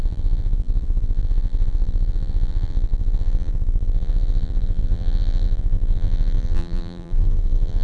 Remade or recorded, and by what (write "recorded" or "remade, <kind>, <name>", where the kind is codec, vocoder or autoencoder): remade, vocoder, BigVGAN v2